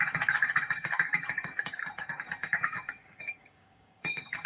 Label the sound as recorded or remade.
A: remade